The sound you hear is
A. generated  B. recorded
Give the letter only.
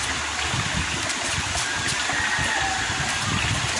B